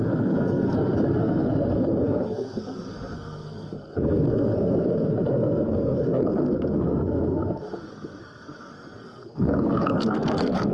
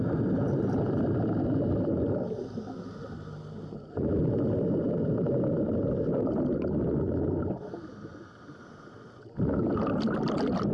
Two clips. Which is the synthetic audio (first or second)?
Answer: first